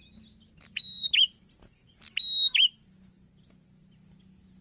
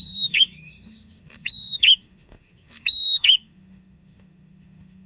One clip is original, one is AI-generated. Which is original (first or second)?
first